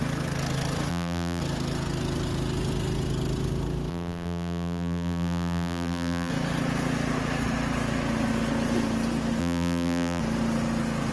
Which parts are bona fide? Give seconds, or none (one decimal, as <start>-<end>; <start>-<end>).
0.0-0.9; 1.4-3.9; 6.3-9.4; 10.2-11.1

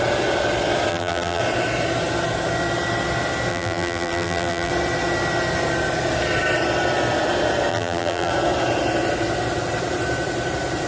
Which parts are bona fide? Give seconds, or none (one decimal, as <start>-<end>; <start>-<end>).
0.0-0.9; 1.4-3.5; 4.7-7.7; 8.3-10.9

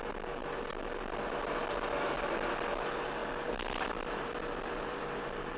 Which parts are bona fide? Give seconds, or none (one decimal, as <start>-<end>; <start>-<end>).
0.0-3.2; 5.0-5.6

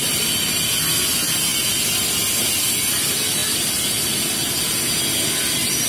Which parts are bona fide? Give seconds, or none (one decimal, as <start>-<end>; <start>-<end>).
0.0-5.9

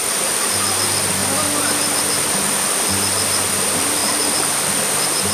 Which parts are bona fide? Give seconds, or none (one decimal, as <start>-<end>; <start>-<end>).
1.2-3.6